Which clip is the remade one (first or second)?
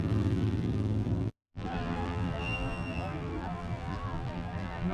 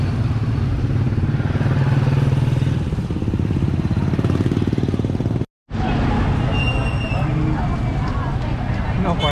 first